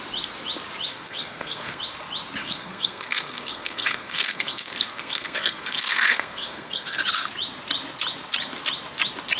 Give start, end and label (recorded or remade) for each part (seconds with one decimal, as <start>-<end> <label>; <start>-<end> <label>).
0.0-0.9 recorded; 0.9-1.8 remade; 1.8-2.4 recorded; 2.4-7.0 remade; 7.0-9.4 recorded